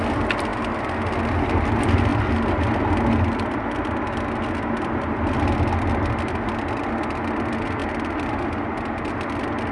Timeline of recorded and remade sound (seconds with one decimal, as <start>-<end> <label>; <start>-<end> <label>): 0.0-9.7 recorded